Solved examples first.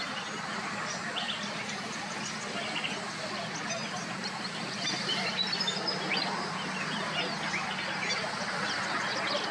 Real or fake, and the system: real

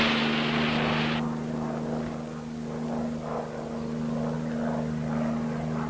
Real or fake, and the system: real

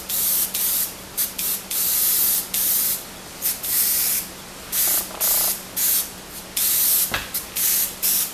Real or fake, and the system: real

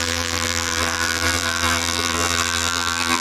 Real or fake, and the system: fake, vocoder, BigVGAN v2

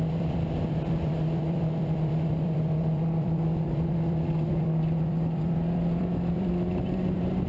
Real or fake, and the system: fake, vocoder, BigVGAN v2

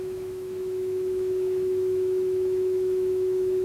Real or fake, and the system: fake, autoencoder, DAC-VAE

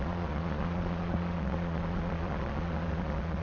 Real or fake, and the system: fake, vocoder, Vocos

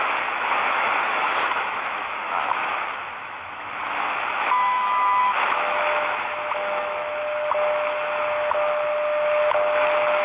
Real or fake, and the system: fake, autoencoder, DAC-VAE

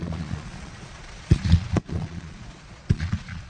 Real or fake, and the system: fake, vocoder, Vocos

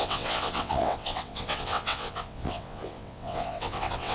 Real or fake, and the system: fake, vocoder, WaveNeXt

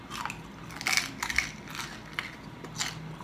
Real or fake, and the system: real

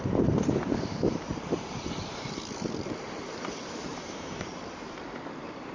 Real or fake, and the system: fake, vocoder, BigVGAN v2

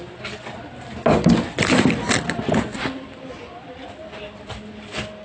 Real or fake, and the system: real